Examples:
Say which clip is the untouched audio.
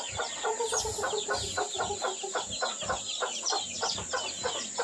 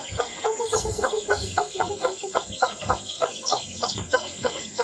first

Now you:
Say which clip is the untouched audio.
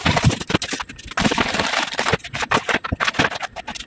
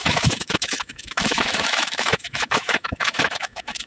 first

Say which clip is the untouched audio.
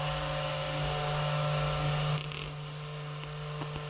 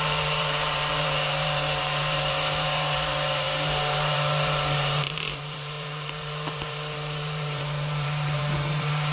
first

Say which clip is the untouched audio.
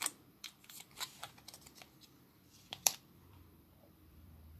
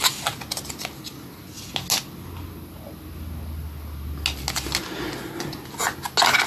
second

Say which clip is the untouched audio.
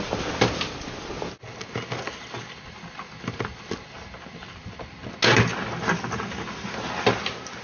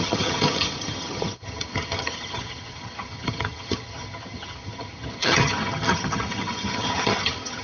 first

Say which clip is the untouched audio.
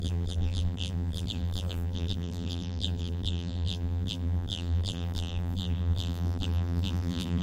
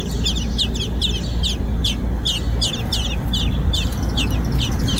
second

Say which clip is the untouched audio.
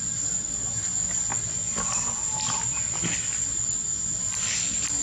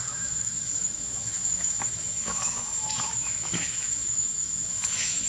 first